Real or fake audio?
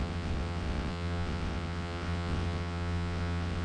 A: fake